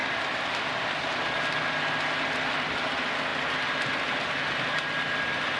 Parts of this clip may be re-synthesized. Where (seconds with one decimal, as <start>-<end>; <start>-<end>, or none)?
none